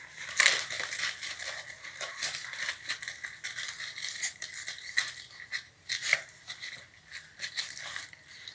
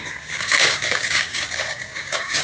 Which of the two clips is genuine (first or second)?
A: first